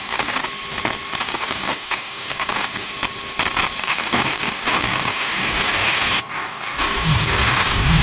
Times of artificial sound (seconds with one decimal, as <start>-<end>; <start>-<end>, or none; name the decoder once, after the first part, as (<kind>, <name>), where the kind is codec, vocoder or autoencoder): 0.0-0.4 (codec, DAC); 1.2-2.9; 3.8-8.0